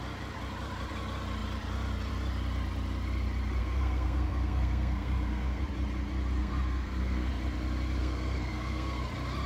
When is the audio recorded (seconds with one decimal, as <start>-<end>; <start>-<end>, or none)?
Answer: 0.0-3.6; 5.6-6.4; 7.3-8.0; 9.0-9.5